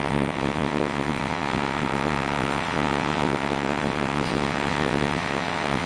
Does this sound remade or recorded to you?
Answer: remade